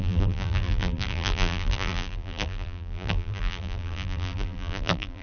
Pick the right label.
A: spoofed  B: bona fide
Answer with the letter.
A